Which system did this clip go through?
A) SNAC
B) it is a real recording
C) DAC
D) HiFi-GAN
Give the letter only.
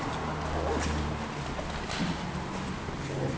B